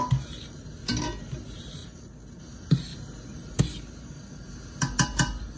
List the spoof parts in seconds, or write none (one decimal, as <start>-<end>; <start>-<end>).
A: none